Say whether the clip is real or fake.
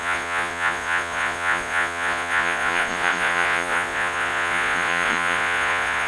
fake